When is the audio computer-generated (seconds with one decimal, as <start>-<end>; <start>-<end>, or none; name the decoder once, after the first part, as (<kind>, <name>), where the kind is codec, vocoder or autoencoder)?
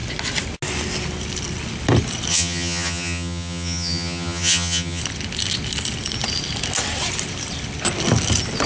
2.3-5.0 (vocoder, HiFi-GAN)